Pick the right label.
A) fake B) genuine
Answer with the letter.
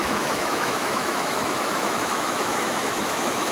A